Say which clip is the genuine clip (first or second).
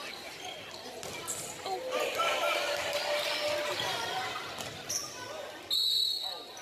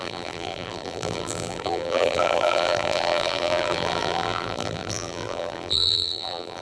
first